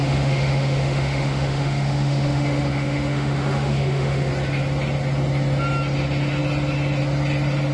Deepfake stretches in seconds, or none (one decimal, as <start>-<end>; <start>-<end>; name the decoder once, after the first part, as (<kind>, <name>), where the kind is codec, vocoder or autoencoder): 0.0-4.3 (autoencoder, DAC-VAE)